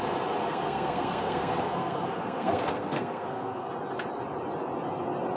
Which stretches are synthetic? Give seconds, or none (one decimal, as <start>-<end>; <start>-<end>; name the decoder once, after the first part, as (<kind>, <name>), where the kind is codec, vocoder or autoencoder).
0.5-3.7 (codec, SNAC)